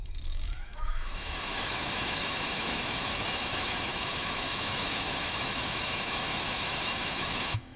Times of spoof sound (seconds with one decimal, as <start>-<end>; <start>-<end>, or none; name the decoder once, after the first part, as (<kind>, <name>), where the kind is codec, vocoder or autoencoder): 0.0-7.8 (autoencoder, DAC-VAE)